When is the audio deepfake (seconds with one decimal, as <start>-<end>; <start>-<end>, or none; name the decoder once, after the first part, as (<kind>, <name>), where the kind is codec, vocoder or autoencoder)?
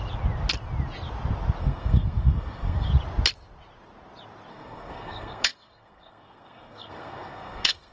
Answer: 1.6-2.9 (codec, SNAC); 4.5-7.9